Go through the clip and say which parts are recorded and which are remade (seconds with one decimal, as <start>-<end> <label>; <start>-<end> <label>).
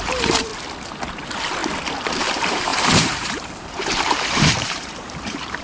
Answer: 0.0-0.5 remade; 0.5-1.1 recorded; 1.1-1.6 remade; 1.6-2.2 recorded; 2.2-5.6 remade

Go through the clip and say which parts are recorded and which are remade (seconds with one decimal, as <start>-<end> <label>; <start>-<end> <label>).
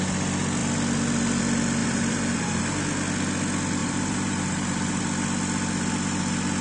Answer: 0.0-1.8 recorded; 1.8-2.6 remade; 2.6-3.8 recorded; 3.8-5.0 remade; 5.0-6.6 recorded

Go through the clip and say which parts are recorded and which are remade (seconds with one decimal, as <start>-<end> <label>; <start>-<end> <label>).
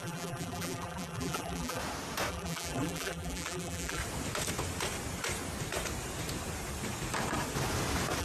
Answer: 0.0-1.8 remade; 1.8-2.3 recorded; 2.3-4.0 remade; 4.0-8.2 recorded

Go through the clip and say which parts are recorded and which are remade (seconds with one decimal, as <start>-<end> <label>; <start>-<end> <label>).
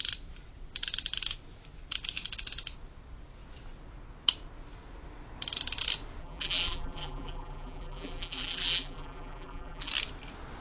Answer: 0.0-6.2 recorded; 6.2-9.9 remade; 9.9-10.6 recorded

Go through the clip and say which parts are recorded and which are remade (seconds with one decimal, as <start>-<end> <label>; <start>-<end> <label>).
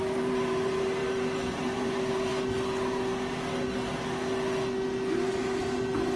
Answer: 0.0-1.0 remade; 1.0-1.5 recorded; 1.5-2.3 remade; 2.3-6.2 recorded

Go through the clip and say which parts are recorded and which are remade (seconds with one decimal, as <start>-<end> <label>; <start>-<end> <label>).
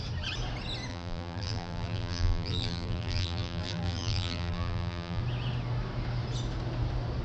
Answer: 0.0-0.9 recorded; 0.9-5.2 remade; 5.2-7.2 recorded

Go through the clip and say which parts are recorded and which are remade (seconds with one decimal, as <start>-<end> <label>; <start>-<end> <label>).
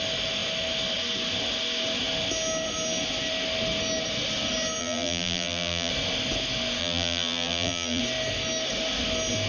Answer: 0.0-4.8 recorded; 4.8-5.9 remade; 5.9-6.8 recorded; 6.8-8.0 remade; 8.0-9.5 recorded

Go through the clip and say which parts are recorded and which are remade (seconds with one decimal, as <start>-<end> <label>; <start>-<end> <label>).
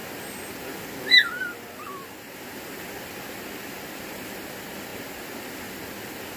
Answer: 0.0-6.4 recorded